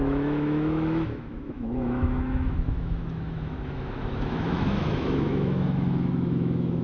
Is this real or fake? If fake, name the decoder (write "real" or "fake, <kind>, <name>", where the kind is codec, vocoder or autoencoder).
fake, autoencoder, DAC-VAE